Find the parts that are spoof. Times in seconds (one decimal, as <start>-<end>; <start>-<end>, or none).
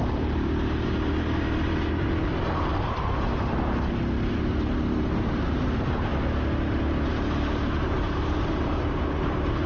0.0-2.7; 4.3-6.1; 7.1-9.7